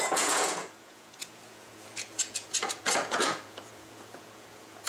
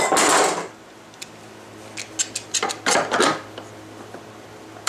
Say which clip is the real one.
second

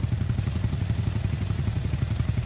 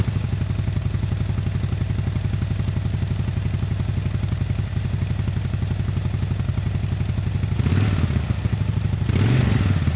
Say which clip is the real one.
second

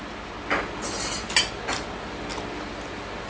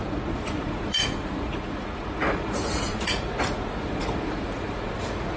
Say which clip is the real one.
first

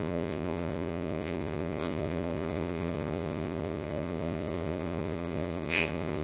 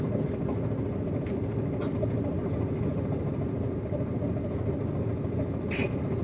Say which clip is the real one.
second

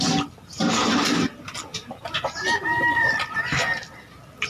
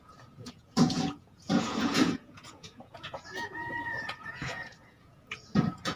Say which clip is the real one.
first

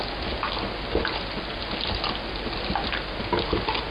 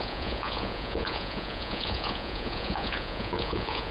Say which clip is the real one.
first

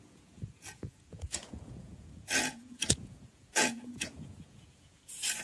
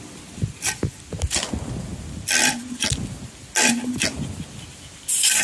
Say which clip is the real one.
second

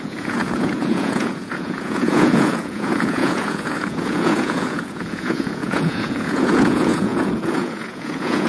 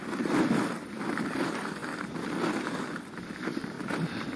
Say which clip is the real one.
second